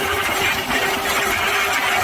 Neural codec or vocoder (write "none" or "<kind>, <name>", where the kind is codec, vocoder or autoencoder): vocoder, BigVGAN v2